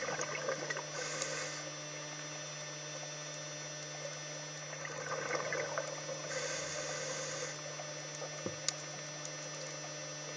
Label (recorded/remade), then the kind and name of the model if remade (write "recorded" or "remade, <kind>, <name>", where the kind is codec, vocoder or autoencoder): recorded